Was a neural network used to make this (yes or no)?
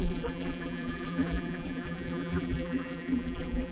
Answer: yes